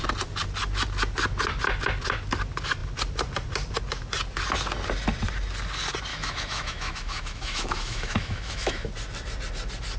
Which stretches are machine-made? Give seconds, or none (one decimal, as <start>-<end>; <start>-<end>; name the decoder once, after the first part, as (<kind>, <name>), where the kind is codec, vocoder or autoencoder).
6.1-8.9 (autoencoder, DAC-VAE)